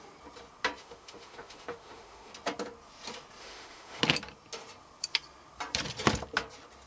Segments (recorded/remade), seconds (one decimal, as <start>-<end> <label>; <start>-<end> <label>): 0.0-0.8 recorded; 0.8-2.3 remade; 2.3-3.4 recorded; 3.4-4.0 remade; 4.0-6.9 recorded